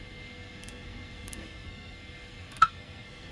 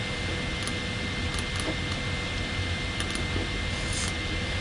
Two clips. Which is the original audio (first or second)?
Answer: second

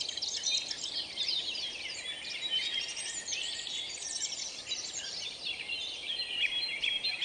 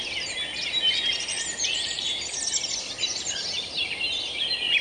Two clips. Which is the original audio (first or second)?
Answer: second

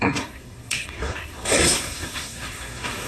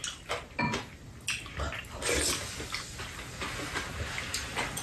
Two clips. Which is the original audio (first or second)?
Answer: second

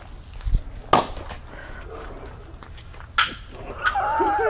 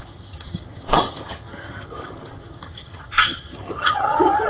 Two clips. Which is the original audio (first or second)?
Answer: first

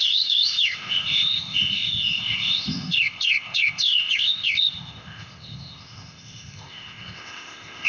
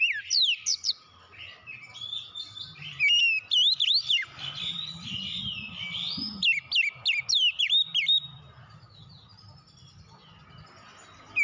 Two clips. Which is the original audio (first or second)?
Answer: second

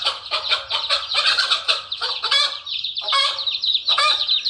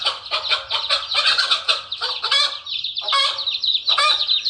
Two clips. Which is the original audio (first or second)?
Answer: second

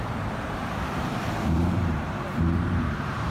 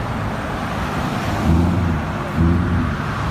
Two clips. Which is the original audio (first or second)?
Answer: second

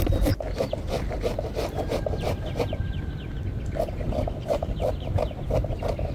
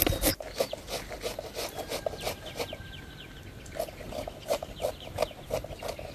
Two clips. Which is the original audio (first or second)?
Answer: second